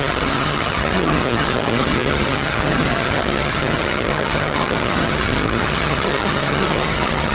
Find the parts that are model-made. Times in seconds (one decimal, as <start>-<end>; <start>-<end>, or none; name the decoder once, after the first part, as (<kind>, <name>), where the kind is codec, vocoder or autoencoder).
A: 0.0-7.3 (vocoder, HiFi-GAN)